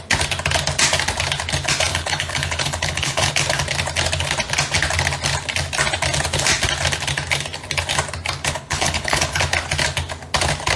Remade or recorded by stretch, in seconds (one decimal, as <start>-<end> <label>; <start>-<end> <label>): 0.0-1.9 recorded; 1.9-3.3 remade; 3.3-8.4 recorded; 8.4-9.4 remade; 9.4-10.8 recorded